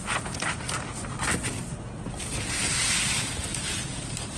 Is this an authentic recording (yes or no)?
yes